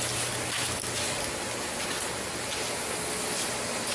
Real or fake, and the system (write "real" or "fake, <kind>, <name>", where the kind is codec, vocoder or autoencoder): real